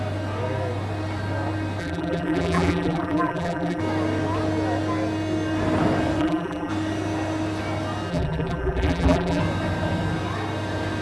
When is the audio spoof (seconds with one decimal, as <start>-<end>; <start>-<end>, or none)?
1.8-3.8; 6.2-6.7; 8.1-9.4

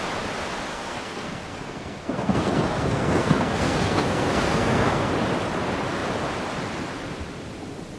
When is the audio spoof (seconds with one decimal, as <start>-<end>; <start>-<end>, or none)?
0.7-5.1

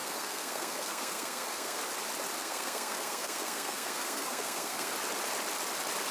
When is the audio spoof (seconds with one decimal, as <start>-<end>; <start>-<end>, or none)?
0.0-1.8; 2.4-4.9

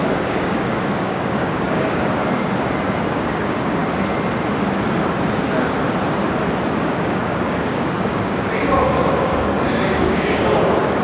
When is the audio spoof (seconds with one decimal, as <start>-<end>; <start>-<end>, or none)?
0.0-2.2; 2.8-3.8; 6.7-11.0